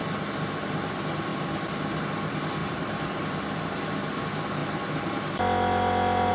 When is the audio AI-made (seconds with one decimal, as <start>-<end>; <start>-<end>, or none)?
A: 2.6-3.8